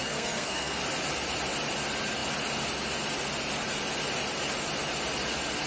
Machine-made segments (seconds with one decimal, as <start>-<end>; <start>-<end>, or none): 0.0-0.8